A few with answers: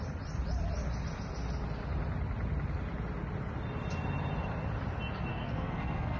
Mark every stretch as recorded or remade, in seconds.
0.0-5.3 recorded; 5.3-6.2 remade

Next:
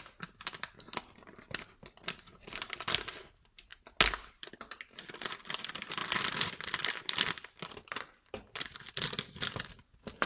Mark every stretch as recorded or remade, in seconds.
0.0-10.3 recorded

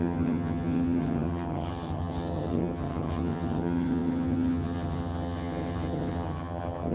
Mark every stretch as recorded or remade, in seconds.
0.0-6.9 remade

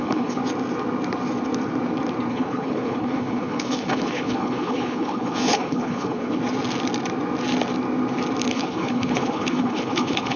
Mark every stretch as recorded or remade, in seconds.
0.0-0.4 remade; 0.4-2.3 recorded; 2.3-6.4 remade; 6.4-8.5 recorded; 8.5-10.4 remade

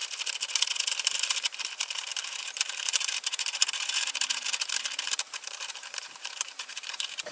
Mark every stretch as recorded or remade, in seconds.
0.0-0.9 recorded; 0.9-7.3 remade

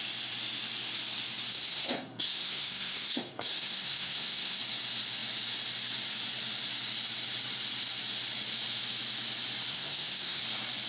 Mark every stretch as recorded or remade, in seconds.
0.0-1.5 recorded; 1.5-4.6 remade; 4.6-9.7 recorded; 9.7-10.4 remade; 10.4-10.9 recorded

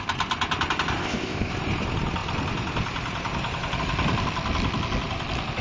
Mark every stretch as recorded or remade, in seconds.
0.0-1.0 recorded; 1.0-1.5 remade; 1.5-5.6 recorded